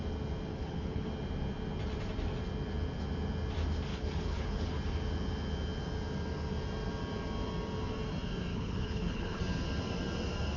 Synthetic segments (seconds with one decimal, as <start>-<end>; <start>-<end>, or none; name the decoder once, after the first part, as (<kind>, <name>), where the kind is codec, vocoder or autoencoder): 0.5-1.1 (codec, HILCodec); 3.9-4.7; 8.5-9.4